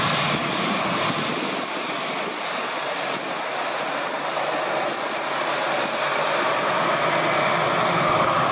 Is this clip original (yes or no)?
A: yes